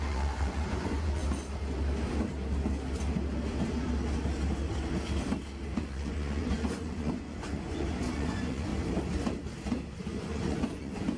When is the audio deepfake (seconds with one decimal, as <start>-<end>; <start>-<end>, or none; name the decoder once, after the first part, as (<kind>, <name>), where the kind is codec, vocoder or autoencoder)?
0.0-1.2 (vocoder, Vocos); 5.8-8.7; 10.0-11.2